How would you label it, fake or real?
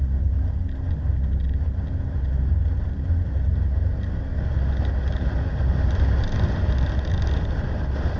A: real